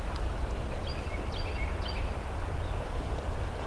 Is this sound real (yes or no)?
yes